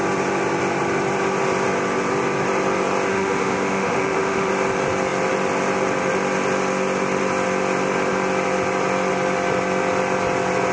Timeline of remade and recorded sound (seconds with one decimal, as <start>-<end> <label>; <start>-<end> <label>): 0.0-3.1 recorded; 3.1-4.5 remade; 4.5-10.7 recorded